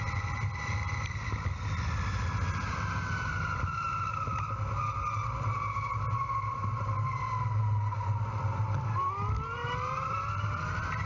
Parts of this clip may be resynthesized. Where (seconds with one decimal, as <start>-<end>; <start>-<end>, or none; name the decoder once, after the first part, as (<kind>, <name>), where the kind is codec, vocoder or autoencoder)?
9.6-11.1 (vocoder, BigVGAN v2)